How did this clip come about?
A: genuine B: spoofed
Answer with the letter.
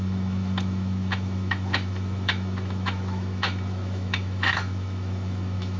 B